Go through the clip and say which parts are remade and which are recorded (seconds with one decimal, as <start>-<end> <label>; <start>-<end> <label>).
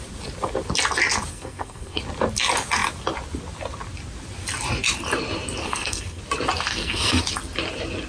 0.0-1.3 recorded; 1.3-2.0 remade; 2.0-5.6 recorded; 5.6-6.2 remade; 6.2-6.7 recorded; 6.7-7.2 remade; 7.2-8.1 recorded